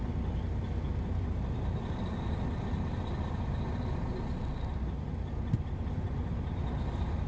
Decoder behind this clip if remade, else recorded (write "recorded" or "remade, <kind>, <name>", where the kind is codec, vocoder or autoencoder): recorded